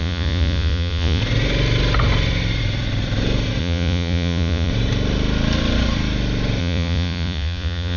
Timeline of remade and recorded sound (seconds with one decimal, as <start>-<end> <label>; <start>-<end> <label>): 0.0-1.2 remade; 1.2-3.6 recorded; 3.6-4.7 remade; 4.7-6.6 recorded; 6.6-8.0 remade